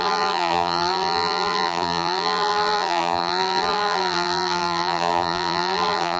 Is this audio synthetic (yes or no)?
yes